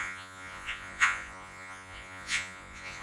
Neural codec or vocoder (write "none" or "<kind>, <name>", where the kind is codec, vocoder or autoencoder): vocoder, Vocos